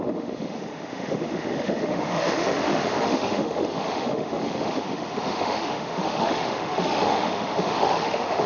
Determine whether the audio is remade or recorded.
remade